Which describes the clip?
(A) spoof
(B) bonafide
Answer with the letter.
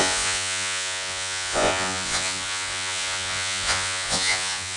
A